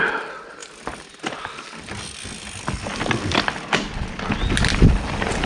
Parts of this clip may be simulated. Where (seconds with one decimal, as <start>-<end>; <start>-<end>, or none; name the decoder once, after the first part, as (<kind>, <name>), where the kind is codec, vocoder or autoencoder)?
none